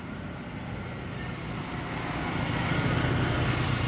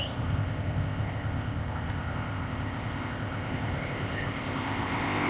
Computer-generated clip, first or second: second